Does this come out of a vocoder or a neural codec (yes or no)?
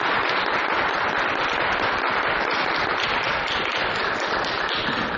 no